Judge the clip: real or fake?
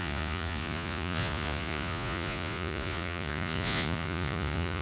fake